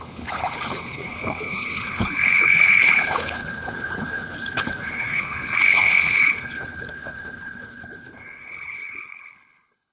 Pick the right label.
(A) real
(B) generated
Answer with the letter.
B